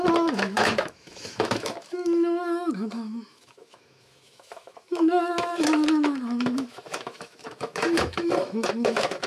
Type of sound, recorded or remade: remade